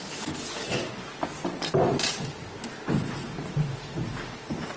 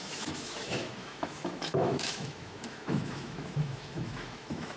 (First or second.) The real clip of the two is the first